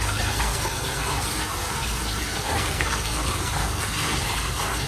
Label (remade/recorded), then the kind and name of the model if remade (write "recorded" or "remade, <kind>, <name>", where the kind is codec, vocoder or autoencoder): remade, codec, SNAC